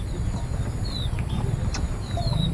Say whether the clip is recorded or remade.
recorded